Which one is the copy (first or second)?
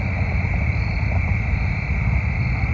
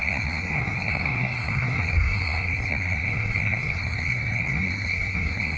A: second